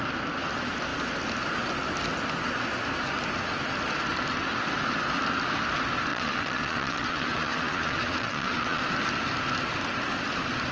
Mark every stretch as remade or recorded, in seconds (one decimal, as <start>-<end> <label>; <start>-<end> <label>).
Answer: 0.0-6.1 recorded; 6.1-8.8 remade; 8.8-10.7 recorded